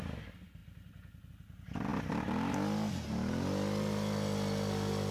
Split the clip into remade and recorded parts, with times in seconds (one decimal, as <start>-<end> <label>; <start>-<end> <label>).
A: 0.0-5.1 recorded